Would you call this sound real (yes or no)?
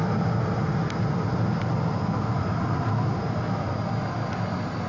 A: yes